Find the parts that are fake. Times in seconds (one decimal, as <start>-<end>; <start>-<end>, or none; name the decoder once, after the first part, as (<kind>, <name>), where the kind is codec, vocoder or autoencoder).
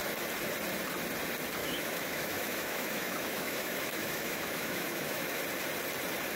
1.6-5.4 (autoencoder, DAC-VAE)